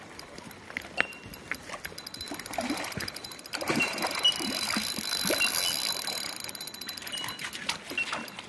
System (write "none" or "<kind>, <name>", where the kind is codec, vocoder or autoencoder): none